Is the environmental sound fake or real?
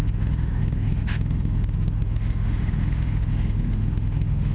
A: fake